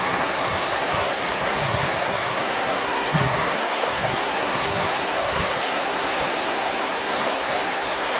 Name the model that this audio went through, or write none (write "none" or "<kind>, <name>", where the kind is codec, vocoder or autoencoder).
codec, SNAC